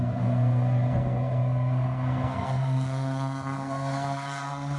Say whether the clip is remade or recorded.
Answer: remade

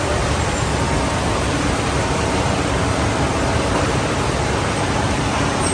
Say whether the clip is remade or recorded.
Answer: remade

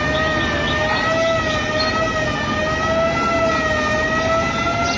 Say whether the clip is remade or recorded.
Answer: recorded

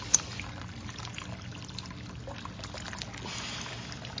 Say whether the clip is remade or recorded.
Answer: recorded